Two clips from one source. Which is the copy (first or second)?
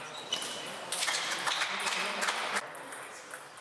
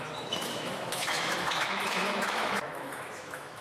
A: second